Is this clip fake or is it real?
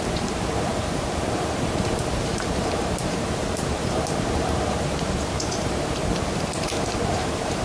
fake